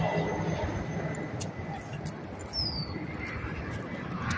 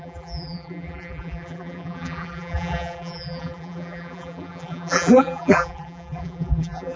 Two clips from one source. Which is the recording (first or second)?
first